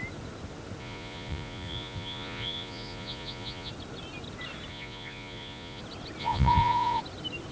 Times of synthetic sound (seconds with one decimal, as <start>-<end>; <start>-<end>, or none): 0.8-3.7; 4.7-5.8; 6.2-7.0